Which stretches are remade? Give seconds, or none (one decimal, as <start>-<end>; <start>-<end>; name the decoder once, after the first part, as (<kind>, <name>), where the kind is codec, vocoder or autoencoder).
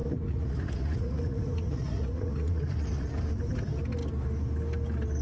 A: 0.0-3.1 (vocoder, Vocos)